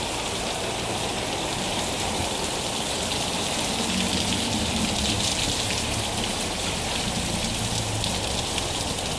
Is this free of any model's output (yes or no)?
yes